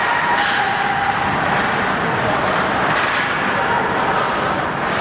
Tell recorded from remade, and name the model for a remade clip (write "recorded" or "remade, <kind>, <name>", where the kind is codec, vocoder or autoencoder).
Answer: recorded